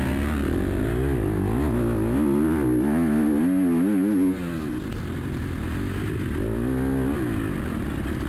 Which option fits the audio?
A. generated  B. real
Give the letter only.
B